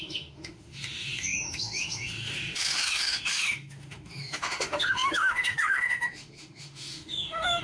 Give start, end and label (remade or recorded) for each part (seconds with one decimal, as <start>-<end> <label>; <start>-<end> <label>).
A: 0.0-7.6 remade

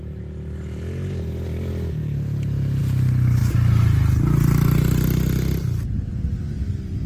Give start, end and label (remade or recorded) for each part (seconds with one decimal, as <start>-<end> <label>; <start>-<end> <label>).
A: 0.0-7.1 recorded

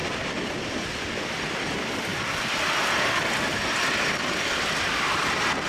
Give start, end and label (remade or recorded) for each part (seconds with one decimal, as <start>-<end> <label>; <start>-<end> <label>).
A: 0.0-5.7 recorded

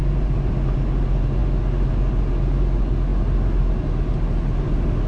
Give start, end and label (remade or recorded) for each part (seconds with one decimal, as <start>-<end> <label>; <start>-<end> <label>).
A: 0.0-5.1 recorded

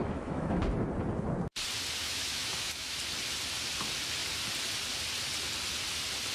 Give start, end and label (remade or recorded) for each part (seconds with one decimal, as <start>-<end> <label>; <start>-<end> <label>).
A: 0.0-0.6 remade; 0.6-2.0 recorded; 2.0-3.0 remade; 3.0-6.3 recorded

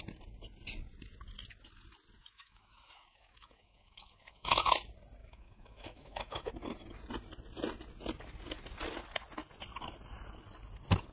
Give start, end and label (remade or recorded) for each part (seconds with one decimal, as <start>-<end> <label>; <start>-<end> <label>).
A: 0.0-2.2 recorded; 2.2-4.7 remade; 4.7-5.2 recorded; 5.2-6.5 remade; 6.5-11.1 recorded

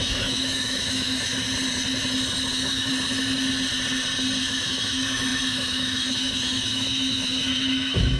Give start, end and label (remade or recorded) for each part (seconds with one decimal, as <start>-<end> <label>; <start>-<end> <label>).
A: 0.0-1.3 remade; 1.3-2.5 recorded; 2.5-2.9 remade; 2.9-4.4 recorded; 4.4-8.2 remade